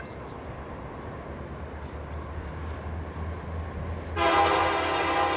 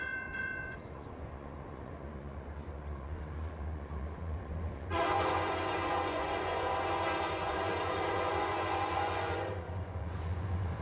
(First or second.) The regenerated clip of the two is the second